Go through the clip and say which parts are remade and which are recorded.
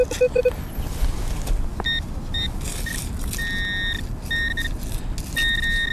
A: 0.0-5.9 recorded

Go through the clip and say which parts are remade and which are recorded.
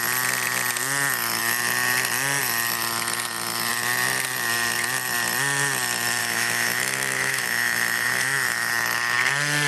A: 0.0-6.2 recorded; 6.2-8.7 remade; 8.7-9.7 recorded